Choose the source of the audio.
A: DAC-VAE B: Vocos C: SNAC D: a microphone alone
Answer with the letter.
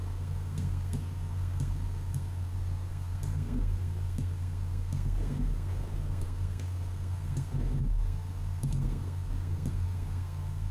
C